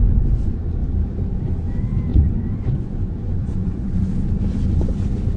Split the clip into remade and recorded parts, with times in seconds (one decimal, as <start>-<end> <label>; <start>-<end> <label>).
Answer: 0.0-2.1 recorded; 2.1-4.1 remade; 4.1-5.4 recorded